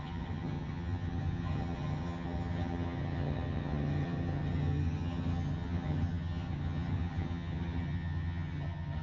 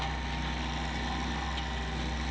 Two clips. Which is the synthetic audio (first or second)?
first